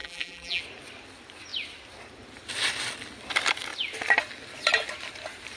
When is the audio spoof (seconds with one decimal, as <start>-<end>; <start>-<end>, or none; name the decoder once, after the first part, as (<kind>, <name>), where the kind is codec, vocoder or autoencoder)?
0.0-0.6 (vocoder, BigVGAN v2)

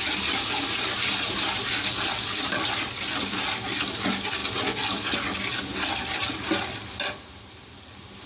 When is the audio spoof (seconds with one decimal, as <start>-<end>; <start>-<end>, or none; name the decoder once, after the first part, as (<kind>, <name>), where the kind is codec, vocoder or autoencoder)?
none